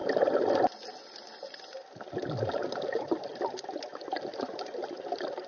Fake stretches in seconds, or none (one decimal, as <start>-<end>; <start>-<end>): 2.6-3.3; 4.1-5.5